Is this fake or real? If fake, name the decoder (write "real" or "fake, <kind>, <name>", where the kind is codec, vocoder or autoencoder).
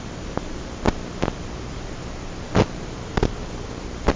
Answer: real